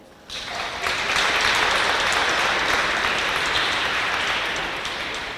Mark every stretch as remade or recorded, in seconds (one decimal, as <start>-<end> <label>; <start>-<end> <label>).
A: 0.0-2.8 recorded; 2.8-4.0 remade; 4.0-5.4 recorded